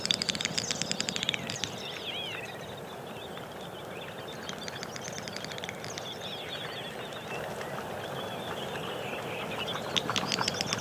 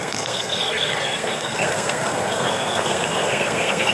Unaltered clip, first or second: first